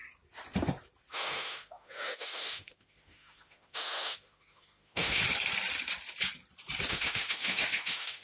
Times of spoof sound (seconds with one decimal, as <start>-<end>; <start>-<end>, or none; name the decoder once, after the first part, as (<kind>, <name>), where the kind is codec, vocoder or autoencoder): 1.1-5.2 (autoencoder, DAC-VAE); 6.9-8.2

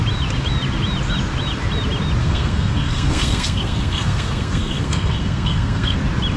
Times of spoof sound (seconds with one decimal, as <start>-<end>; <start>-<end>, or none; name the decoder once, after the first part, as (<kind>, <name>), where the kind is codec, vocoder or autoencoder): 2.2-6.0 (codec, SNAC)

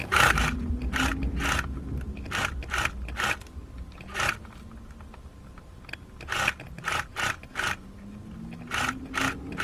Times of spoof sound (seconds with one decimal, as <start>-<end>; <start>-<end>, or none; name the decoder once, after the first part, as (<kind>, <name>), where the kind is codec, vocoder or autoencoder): none

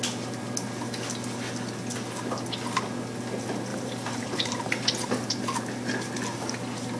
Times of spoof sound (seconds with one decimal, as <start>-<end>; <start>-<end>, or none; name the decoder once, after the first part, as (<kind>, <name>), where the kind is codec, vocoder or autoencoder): 3.7-5.3 (vocoder, BigVGAN v2)

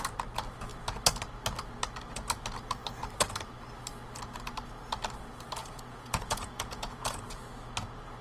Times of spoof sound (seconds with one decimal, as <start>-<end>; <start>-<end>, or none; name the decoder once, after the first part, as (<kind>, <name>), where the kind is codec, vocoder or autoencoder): 5.6-7.2 (vocoder, Vocos)

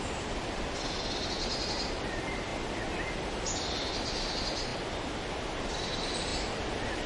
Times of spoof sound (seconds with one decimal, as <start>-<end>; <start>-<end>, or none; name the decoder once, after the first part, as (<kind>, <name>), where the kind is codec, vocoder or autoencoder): none

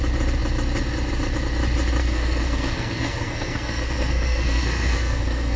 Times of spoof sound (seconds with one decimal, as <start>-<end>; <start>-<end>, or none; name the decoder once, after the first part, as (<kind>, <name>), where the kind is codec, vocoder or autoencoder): 2.0-5.6 (codec, SNAC)

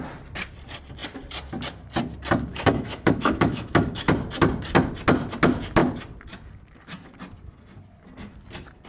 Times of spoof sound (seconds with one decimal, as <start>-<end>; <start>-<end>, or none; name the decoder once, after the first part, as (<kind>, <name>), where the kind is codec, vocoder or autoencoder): 2.5-4.1 (autoencoder, DAC-VAE)